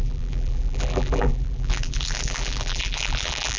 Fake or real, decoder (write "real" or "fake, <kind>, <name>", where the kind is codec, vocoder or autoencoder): fake, vocoder, BigVGAN v2